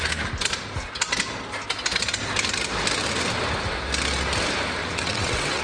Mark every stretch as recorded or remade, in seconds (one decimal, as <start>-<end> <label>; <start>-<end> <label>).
0.0-4.8 recorded; 4.8-5.6 remade